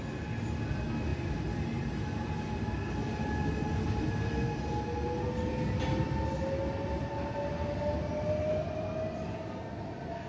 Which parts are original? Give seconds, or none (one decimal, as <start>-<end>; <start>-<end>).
0.0-10.3